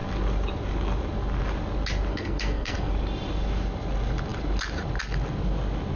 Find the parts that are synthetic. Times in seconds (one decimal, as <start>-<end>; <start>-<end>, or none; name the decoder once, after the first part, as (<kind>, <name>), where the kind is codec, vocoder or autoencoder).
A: 2.1-2.9 (codec, SNAC)